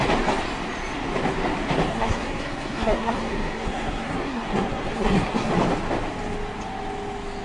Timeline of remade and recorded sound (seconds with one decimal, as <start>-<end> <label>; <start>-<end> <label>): 0.0-1.9 recorded; 1.9-5.5 remade; 5.5-7.4 recorded